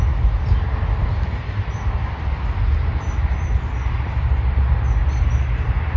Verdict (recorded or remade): recorded